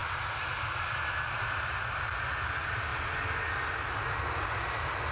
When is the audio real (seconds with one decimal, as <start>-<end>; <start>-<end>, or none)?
0.0-5.1